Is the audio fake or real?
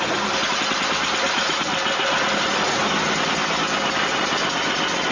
real